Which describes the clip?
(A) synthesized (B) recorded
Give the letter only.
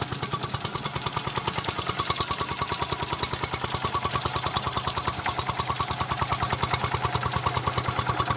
B